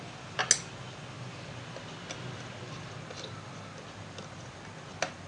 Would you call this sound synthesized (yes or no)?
no